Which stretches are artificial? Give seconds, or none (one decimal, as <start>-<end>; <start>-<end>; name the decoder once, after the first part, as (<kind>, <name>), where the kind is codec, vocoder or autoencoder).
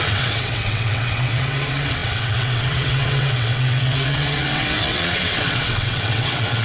0.0-6.6 (vocoder, WaveNeXt)